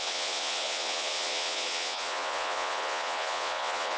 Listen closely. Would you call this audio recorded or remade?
remade